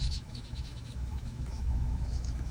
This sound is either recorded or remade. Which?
remade